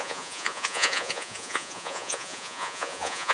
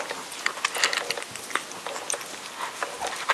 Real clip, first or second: second